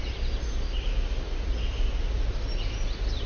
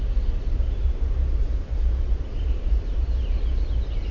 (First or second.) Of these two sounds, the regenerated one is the second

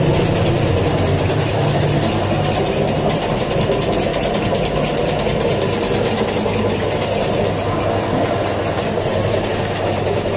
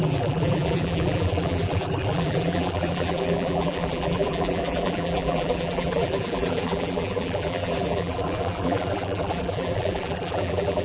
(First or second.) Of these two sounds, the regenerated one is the second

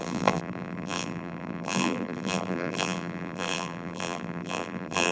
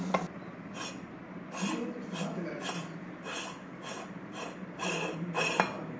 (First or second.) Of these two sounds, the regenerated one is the first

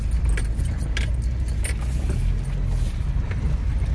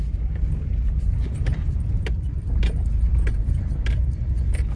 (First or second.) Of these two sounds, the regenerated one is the second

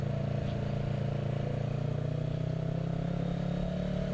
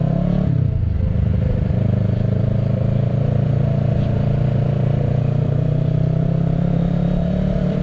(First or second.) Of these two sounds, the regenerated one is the second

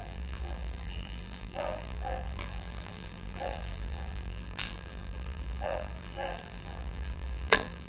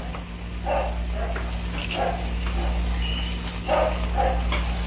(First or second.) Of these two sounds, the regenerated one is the first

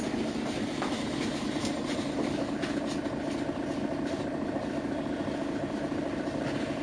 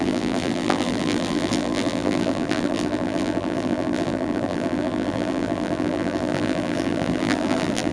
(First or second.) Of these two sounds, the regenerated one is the second